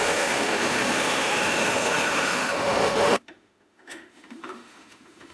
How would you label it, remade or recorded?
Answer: remade